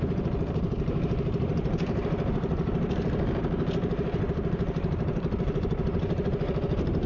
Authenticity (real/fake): fake